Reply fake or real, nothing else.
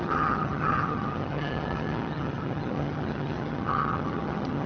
fake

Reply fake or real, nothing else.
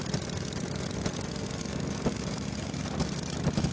real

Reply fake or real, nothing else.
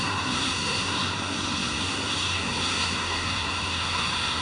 fake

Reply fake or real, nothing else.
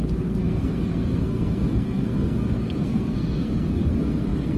fake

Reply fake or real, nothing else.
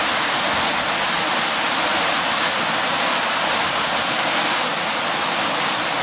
real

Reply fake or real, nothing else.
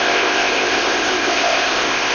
fake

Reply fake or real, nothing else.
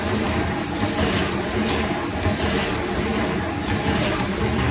real